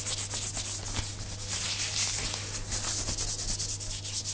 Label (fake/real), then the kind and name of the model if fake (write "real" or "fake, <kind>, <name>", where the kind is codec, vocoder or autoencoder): real